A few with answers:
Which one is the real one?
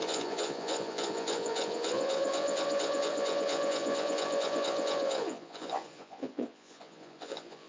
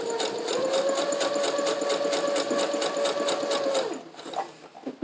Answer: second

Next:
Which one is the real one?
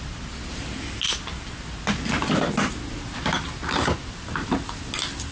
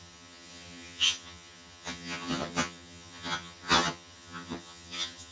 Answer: first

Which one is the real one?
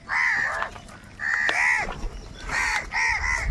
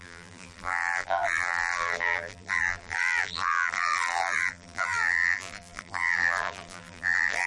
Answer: first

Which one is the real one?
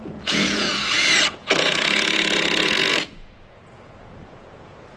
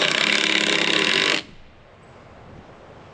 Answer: second